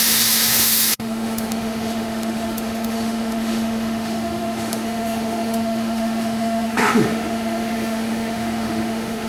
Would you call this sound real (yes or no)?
no